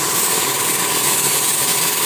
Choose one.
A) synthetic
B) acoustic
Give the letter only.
A